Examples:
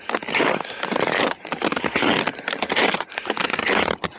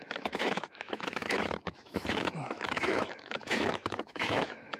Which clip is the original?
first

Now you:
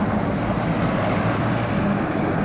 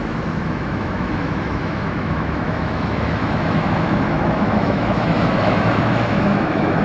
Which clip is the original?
first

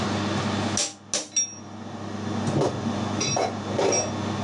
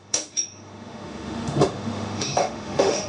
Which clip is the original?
first